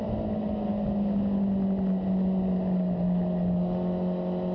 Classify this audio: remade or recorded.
recorded